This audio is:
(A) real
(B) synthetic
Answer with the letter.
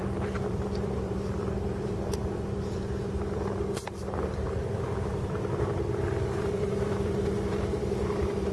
B